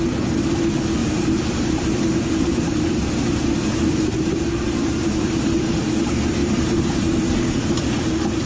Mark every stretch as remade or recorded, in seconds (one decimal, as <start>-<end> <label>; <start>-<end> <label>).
0.0-1.0 recorded; 1.0-5.8 remade; 5.8-6.4 recorded; 6.4-7.8 remade; 7.8-8.5 recorded